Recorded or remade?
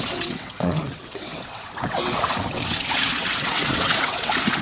remade